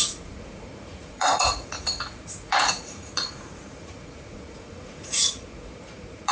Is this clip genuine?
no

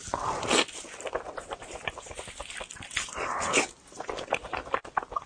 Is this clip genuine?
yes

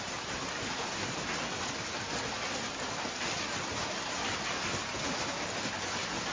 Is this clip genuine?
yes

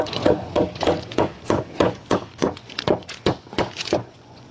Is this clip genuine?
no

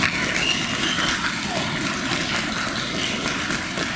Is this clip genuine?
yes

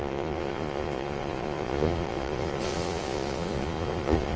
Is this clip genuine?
no